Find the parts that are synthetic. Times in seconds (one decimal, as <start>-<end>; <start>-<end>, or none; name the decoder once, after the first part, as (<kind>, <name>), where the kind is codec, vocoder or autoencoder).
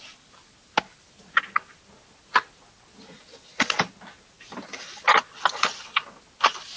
none